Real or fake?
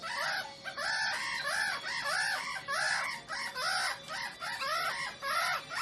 real